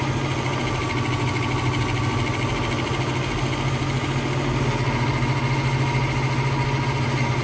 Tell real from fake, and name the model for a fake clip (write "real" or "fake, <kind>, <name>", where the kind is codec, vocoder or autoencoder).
real